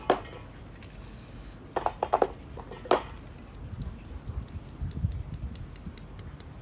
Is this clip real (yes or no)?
yes